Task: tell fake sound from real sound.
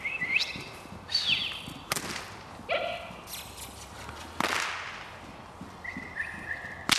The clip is real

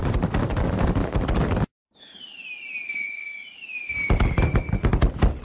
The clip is real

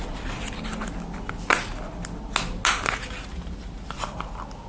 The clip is real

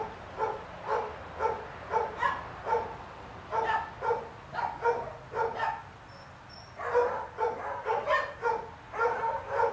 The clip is real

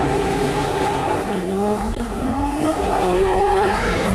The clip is fake